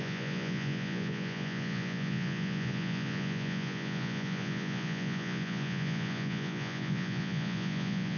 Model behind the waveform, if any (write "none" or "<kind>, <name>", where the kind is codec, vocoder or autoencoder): vocoder, Vocos